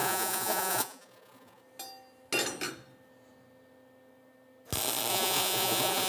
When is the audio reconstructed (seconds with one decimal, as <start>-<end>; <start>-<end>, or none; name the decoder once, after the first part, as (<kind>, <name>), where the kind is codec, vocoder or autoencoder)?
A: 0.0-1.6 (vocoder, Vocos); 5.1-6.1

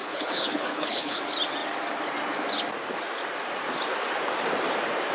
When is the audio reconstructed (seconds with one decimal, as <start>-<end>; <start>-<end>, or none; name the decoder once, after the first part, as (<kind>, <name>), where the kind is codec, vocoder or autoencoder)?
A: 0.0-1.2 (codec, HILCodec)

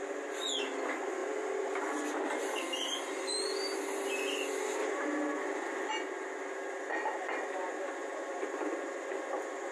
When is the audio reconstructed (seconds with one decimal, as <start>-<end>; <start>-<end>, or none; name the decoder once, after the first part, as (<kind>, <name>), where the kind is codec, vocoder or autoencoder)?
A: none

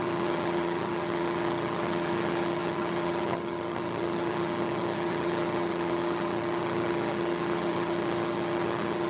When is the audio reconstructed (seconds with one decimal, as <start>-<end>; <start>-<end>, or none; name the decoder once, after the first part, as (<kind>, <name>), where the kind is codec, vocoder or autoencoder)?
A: 0.0-9.1 (vocoder, HiFi-GAN)

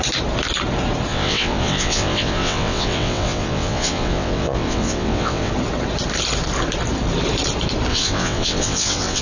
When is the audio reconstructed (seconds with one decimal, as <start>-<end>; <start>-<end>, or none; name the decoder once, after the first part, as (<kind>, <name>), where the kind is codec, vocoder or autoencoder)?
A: 1.1-5.5 (vocoder, WaveNeXt); 7.9-9.2